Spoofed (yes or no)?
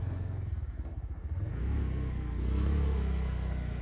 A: yes